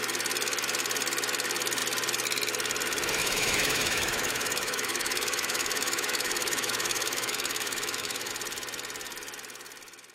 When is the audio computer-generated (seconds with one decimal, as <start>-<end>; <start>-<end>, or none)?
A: 3.2-8.3